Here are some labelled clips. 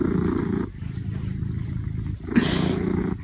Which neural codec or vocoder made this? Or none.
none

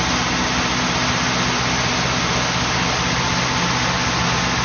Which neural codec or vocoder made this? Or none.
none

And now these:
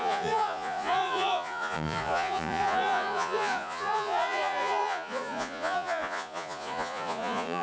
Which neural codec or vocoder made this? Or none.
vocoder, Vocos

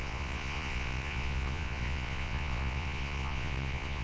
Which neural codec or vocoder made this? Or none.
vocoder, Vocos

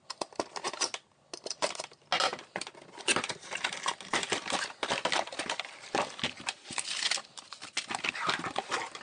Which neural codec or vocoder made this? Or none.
none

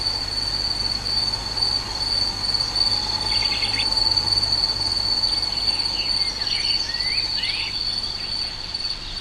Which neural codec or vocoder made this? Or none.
none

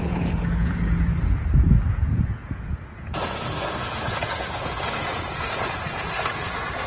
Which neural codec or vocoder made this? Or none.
vocoder, Vocos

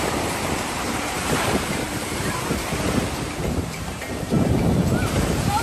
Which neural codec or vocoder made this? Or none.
vocoder, BigVGAN v2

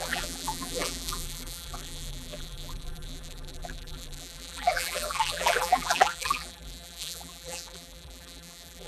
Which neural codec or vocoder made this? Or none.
vocoder, BigVGAN v2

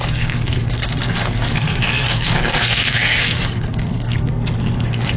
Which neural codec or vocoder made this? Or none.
codec, SNAC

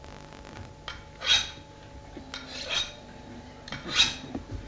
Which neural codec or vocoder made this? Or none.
none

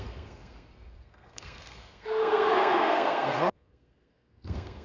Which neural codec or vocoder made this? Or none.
codec, SNAC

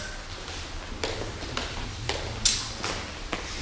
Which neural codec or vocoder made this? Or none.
none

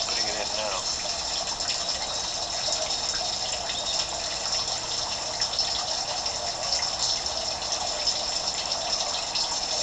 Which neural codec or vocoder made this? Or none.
none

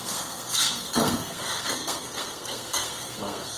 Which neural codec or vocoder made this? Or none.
codec, SNAC